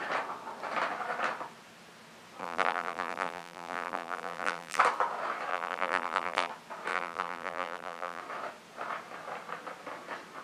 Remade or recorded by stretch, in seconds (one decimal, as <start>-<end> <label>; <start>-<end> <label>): 0.0-2.4 recorded; 2.4-4.8 remade; 4.8-5.5 recorded; 5.5-6.5 remade; 6.5-6.9 recorded; 6.9-8.2 remade; 8.2-10.4 recorded